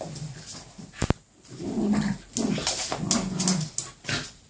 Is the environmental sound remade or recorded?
recorded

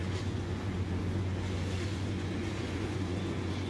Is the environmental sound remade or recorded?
remade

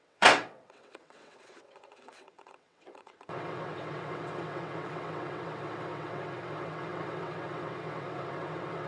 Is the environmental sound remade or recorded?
remade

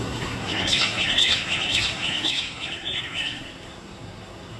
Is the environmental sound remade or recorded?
remade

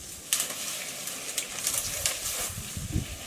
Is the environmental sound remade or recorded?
recorded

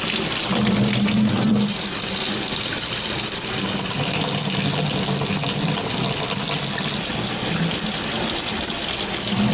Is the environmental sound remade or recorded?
recorded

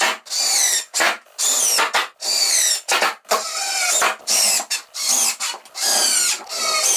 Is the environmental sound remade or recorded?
recorded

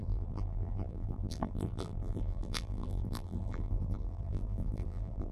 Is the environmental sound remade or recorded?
remade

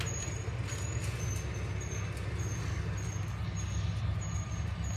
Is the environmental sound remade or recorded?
recorded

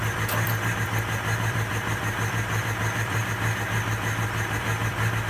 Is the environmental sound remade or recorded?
remade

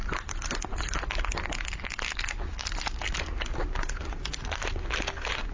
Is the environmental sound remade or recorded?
recorded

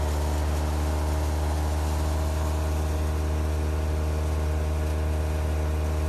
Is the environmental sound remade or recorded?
recorded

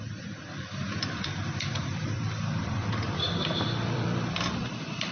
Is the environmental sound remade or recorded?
remade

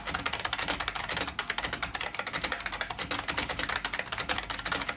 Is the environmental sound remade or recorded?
recorded